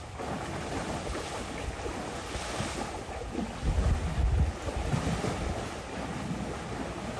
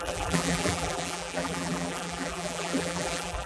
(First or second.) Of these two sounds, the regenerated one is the second